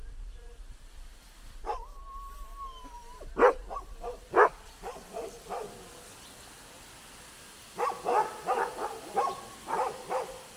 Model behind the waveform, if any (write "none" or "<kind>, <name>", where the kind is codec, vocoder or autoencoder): none